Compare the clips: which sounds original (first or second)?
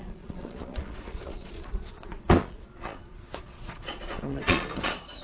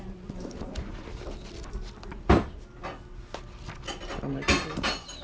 second